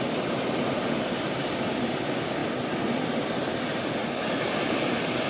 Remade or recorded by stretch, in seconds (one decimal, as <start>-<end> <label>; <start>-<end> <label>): 0.0-5.3 recorded